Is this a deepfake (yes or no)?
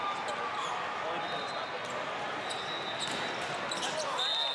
no